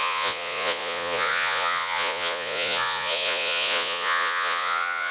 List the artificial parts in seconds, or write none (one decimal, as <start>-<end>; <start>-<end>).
0.0-5.1

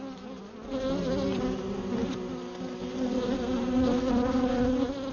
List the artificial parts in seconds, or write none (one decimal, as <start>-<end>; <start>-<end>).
none

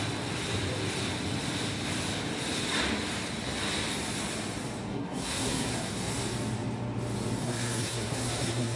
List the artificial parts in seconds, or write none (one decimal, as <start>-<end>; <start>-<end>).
4.9-6.1; 7.4-8.8

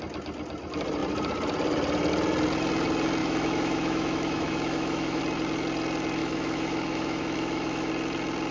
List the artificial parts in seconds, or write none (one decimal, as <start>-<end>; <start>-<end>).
3.2-5.2; 6.2-7.9

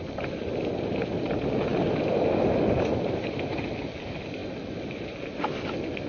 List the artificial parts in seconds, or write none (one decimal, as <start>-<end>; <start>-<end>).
none

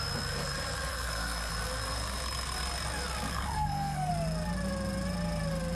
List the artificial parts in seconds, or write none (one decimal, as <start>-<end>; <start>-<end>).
0.9-1.5; 3.3-4.1

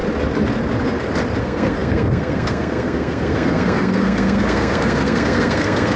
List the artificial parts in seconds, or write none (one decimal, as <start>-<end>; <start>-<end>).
1.4-6.0

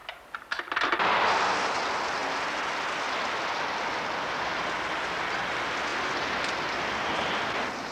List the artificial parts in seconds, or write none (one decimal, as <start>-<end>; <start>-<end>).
none